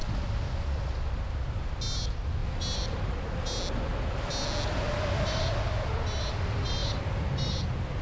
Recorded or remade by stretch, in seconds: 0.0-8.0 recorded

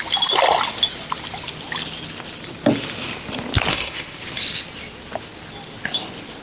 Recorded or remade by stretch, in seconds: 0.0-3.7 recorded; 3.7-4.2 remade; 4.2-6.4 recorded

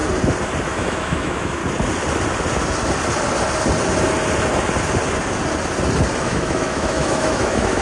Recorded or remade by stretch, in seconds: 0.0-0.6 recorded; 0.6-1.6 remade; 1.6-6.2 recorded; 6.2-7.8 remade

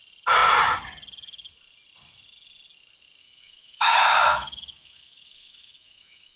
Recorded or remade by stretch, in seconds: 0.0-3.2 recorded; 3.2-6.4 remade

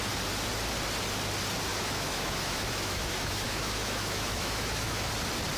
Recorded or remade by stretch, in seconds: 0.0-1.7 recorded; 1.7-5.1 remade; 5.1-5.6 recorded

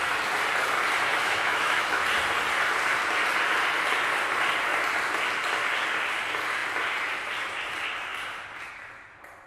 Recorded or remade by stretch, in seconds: 0.0-1.1 recorded; 1.1-2.0 remade; 2.0-9.5 recorded

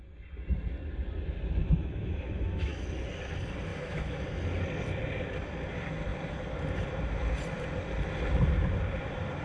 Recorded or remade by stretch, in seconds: 0.0-1.6 recorded; 1.6-2.8 remade; 2.8-3.7 recorded; 3.7-4.2 remade; 4.2-9.4 recorded